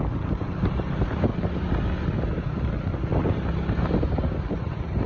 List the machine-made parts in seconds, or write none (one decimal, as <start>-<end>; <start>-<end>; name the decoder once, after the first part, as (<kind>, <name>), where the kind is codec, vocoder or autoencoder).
0.0-1.3 (vocoder, BigVGAN v2); 4.4-5.1